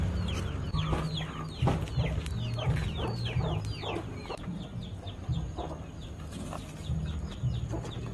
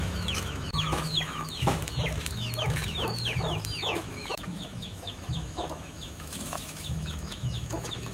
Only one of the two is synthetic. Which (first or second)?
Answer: second